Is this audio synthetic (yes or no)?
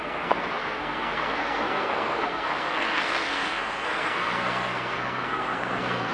yes